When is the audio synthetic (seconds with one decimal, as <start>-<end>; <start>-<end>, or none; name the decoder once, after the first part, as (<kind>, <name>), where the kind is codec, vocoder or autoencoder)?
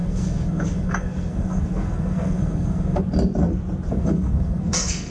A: 0.0-3.0 (codec, SNAC); 3.9-5.1